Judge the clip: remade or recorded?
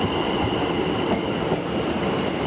recorded